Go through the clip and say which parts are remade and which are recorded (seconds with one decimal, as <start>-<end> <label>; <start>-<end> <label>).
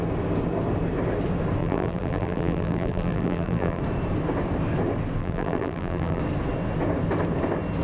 0.0-1.6 recorded; 1.6-3.8 remade; 3.8-5.2 recorded; 5.2-6.2 remade; 6.2-7.8 recorded